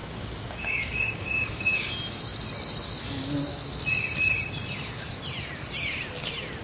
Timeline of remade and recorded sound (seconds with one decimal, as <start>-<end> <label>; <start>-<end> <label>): 0.0-1.9 remade; 1.9-6.6 recorded